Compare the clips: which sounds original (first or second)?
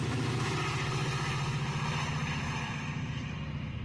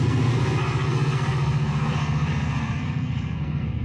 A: first